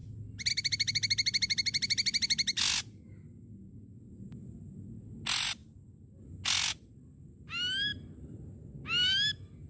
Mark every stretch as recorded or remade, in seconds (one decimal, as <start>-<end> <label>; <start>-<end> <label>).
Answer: 0.0-9.7 recorded